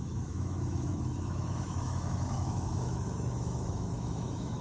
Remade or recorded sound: remade